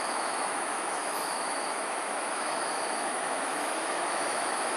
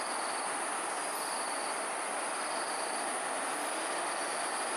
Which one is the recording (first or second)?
second